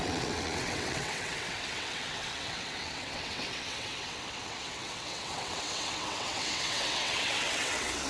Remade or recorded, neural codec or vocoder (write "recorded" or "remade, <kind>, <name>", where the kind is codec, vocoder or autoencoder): remade, vocoder, WaveNeXt